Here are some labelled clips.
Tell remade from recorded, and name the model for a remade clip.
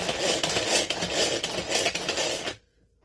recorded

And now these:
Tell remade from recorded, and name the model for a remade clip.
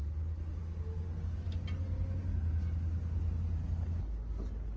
recorded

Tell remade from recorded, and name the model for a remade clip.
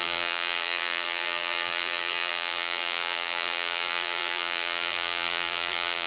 remade, vocoder, BigVGAN v2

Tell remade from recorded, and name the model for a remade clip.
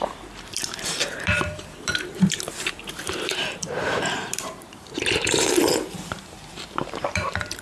remade, vocoder, BigVGAN v2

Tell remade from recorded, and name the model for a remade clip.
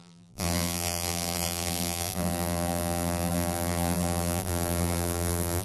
remade, vocoder, BigVGAN v2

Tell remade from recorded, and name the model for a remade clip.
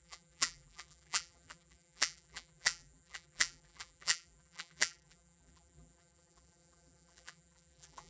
remade, vocoder, BigVGAN v2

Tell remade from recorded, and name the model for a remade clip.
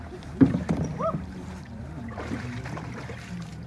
remade, vocoder, BigVGAN v2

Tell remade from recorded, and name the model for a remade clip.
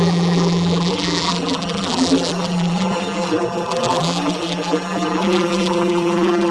remade, vocoder, BigVGAN v2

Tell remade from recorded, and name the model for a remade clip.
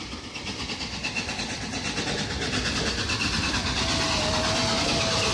recorded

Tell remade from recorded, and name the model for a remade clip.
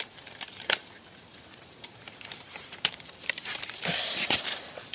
remade, vocoder, BigVGAN v2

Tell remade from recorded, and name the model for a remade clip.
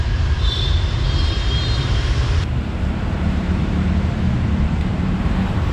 remade, vocoder, BigVGAN v2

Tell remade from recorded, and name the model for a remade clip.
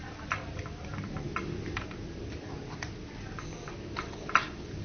recorded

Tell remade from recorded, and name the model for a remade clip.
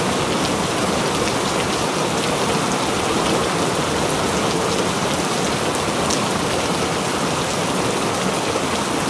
recorded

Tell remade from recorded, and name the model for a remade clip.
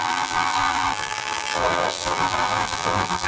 remade, vocoder, BigVGAN v2